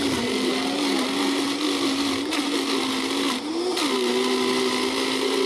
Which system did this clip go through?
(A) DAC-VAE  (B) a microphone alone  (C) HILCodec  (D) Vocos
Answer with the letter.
B